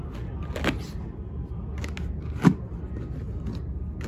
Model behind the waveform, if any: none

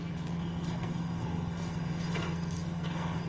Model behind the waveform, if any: codec, SNAC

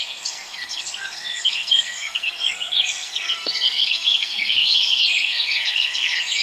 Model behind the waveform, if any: codec, SNAC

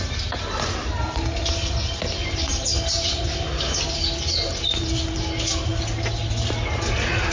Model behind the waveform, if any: none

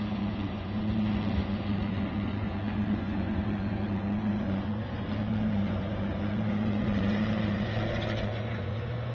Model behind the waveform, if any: vocoder, Vocos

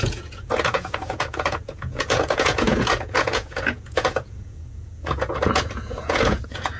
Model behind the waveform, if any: vocoder, Vocos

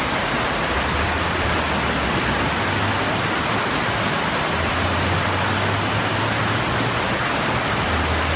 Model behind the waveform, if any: none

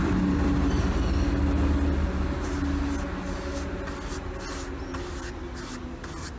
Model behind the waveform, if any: none